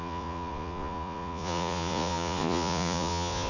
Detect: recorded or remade remade